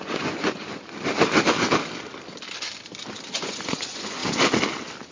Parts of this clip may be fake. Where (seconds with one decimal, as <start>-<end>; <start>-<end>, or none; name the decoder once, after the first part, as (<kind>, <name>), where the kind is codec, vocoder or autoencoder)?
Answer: 0.0-0.6 (vocoder, Vocos); 3.3-4.2